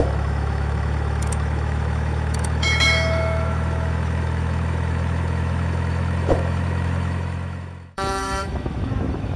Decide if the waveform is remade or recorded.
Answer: remade